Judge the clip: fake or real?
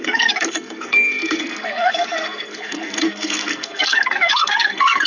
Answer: fake